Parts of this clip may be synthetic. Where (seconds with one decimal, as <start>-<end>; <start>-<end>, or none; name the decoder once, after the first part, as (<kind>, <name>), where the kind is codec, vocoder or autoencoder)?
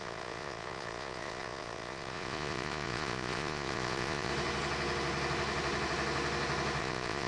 0.0-4.3 (vocoder, Vocos); 6.8-7.3